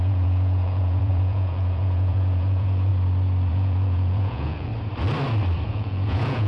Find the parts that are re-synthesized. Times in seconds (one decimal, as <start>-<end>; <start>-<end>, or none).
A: 0.0-2.9; 3.5-4.7; 5.7-6.5